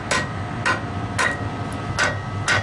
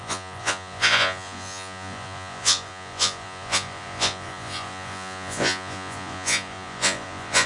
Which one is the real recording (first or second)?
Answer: first